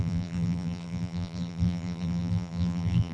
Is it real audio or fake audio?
fake